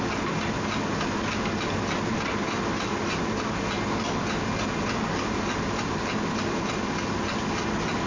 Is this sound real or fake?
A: real